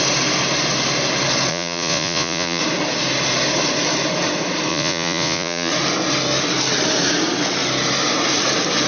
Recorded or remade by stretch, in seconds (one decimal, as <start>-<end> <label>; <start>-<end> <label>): 0.0-1.5 recorded; 1.5-2.6 remade; 2.6-4.7 recorded; 4.7-5.7 remade; 5.7-8.9 recorded